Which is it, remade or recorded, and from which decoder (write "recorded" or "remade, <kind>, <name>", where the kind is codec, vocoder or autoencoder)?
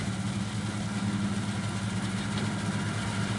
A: recorded